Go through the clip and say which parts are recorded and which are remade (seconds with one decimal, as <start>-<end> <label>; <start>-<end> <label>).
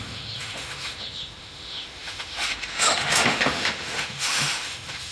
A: 0.0-5.1 remade